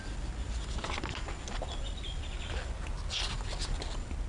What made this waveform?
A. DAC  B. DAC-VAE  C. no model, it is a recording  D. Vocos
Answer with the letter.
C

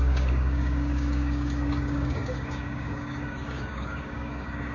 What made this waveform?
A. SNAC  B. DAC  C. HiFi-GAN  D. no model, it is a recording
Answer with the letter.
B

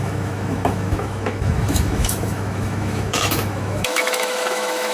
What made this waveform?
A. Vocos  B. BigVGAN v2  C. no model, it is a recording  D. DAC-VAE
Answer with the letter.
D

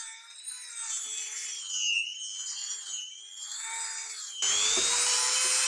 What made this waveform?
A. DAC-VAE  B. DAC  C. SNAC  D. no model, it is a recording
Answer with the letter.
D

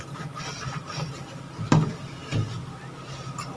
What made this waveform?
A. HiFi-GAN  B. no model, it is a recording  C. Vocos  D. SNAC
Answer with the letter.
B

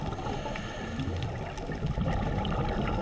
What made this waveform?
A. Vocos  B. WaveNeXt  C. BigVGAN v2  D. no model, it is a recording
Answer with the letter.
D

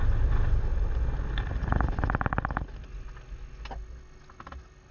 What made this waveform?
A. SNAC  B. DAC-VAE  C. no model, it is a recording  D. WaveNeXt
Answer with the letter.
C